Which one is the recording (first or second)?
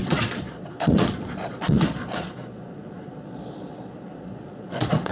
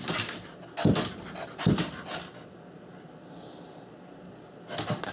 second